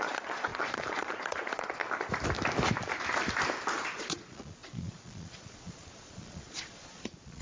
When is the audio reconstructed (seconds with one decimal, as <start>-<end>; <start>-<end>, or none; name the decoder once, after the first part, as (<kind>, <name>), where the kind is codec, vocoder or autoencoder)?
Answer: 0.0-1.8 (vocoder, Vocos); 3.9-7.4